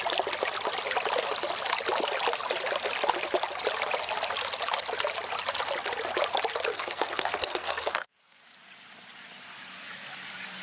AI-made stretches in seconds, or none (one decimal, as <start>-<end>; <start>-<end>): 6.7-8.4

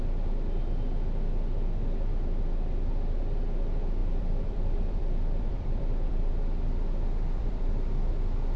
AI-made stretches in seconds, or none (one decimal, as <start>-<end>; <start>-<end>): 4.0-6.3; 7.4-8.1

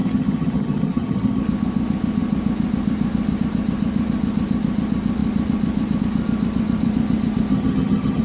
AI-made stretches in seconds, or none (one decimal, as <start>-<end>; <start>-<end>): 0.0-1.4; 7.5-8.2

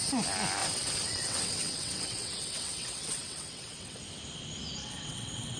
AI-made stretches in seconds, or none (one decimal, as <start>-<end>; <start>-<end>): 0.6-4.0; 4.8-5.6

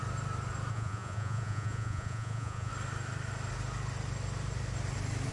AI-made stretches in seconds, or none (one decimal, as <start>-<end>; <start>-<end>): 0.7-2.7

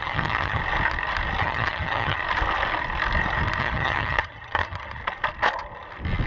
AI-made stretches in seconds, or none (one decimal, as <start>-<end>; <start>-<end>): 0.0-0.6; 1.4-2.2; 3.6-5.0